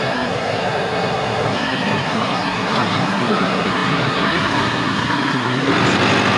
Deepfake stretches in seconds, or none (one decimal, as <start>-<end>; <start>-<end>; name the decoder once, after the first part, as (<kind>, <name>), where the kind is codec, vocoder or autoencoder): 0.0-5.7 (codec, SNAC)